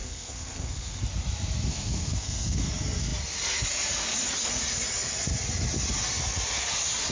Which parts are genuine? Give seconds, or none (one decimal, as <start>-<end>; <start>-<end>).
1.0-1.7; 2.7-7.1